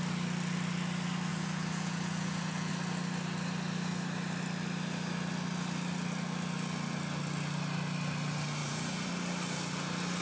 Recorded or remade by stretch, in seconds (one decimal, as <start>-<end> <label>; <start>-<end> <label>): 0.0-1.3 recorded; 1.3-2.7 remade; 2.7-8.6 recorded; 8.6-9.1 remade; 9.1-10.2 recorded